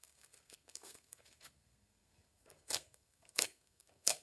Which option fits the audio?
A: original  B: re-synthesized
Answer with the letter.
B